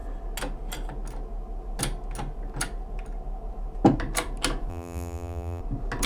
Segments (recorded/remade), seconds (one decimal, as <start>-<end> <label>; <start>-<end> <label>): 0.0-4.7 recorded; 4.7-5.6 remade; 5.6-6.1 recorded